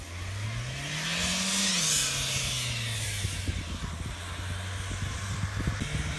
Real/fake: real